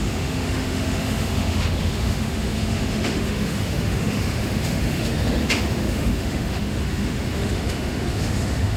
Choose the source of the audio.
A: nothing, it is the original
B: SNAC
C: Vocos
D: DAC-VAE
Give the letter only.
D